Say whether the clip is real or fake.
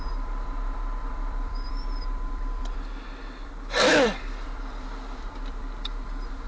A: fake